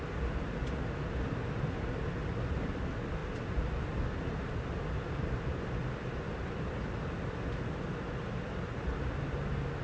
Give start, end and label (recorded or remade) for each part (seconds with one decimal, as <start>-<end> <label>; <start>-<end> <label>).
0.0-9.8 recorded